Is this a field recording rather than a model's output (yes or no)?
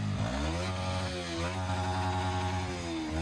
yes